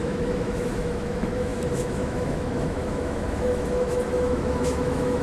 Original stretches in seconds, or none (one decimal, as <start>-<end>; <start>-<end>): none